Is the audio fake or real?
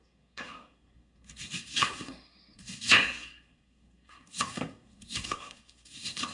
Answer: fake